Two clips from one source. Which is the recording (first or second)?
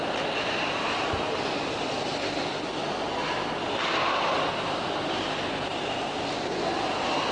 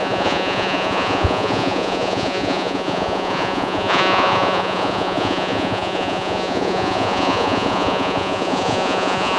first